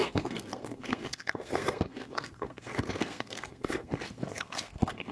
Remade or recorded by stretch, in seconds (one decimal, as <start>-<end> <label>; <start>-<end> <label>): 0.0-5.1 remade